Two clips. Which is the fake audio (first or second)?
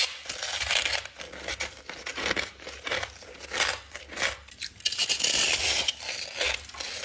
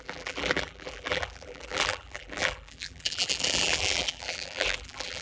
second